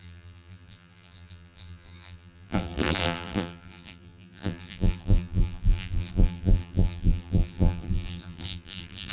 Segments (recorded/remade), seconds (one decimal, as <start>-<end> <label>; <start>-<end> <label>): 0.0-9.1 remade